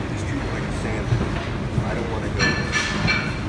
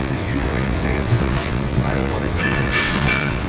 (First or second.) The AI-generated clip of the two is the second